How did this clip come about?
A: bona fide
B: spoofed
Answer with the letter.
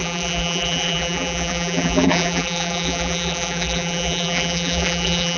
B